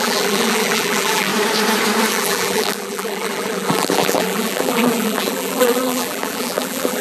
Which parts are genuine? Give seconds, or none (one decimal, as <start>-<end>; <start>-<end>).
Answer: 1.3-2.1